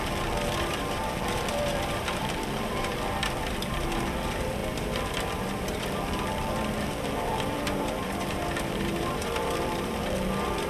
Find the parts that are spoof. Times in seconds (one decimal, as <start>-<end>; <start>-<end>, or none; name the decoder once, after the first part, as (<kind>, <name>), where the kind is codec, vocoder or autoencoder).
0.0-4.6 (vocoder, BigVGAN v2); 5.4-10.7